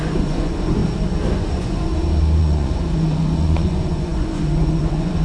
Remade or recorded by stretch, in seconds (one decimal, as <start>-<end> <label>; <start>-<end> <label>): 0.0-0.8 remade; 0.8-1.3 recorded; 1.3-1.9 remade; 1.9-2.4 recorded; 2.4-5.2 remade